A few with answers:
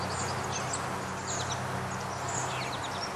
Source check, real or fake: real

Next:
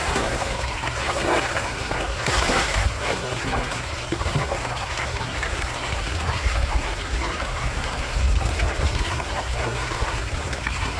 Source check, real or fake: fake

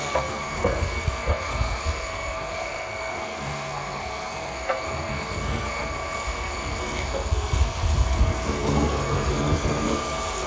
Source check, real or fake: fake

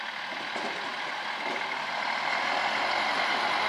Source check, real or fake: real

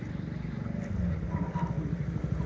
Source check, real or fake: real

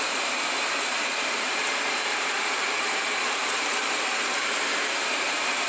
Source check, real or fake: fake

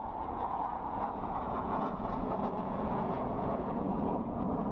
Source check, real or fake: fake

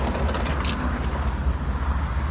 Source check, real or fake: real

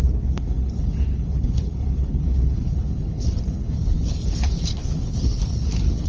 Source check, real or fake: fake